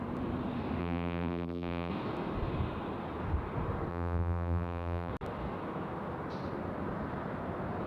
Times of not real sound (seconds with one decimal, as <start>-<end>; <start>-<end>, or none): 0.8-1.9; 3.9-5.1